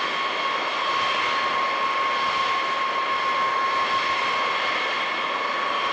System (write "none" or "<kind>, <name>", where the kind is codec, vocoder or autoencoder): none